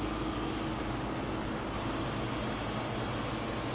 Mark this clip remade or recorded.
recorded